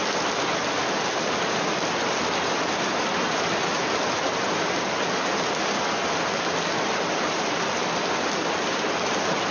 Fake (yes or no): no